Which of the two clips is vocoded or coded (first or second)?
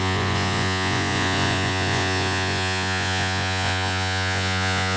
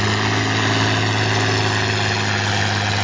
first